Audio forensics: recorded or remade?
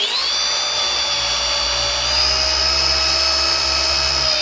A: recorded